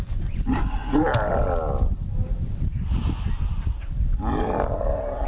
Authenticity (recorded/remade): recorded